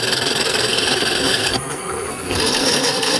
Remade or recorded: remade